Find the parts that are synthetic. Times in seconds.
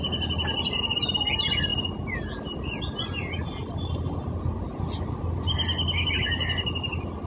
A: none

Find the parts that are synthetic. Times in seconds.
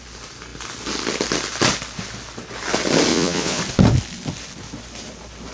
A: 3.1-3.6 (vocoder, Vocos)